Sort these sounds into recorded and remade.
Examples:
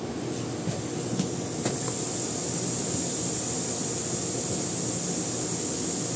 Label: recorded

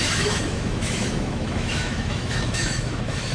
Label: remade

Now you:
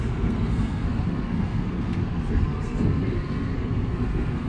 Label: remade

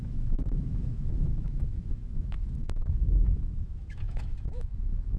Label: remade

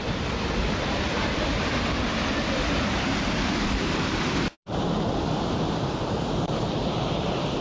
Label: remade